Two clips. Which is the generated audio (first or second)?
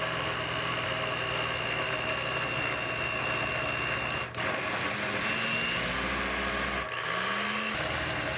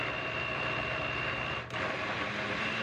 second